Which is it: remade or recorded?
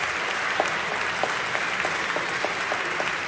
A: recorded